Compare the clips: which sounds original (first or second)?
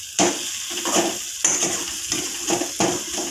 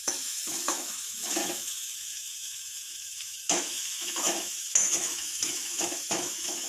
first